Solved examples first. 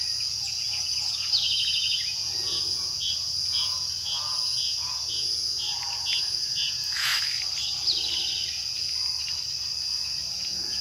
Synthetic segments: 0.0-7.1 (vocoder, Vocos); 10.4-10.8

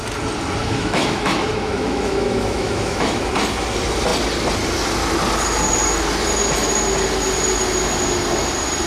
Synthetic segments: 0.6-3.3 (autoencoder, DAC-VAE)

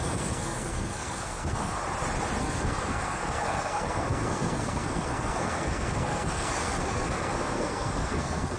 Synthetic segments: 0.0-1.8 (codec, SNAC); 2.4-8.6

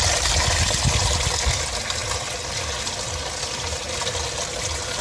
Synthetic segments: none

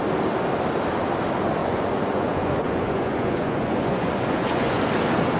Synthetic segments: 1.6-4.8 (vocoder, Vocos)